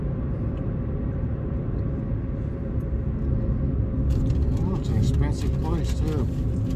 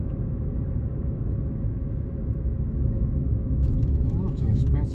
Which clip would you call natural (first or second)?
first